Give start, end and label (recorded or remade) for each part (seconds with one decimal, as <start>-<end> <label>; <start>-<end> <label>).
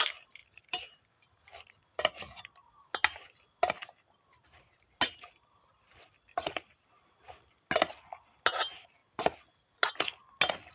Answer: 0.0-0.4 recorded; 0.4-1.8 remade; 1.8-10.7 recorded